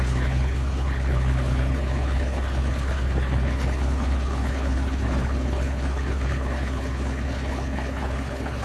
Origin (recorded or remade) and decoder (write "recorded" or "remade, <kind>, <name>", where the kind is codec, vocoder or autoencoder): remade, codec, HILCodec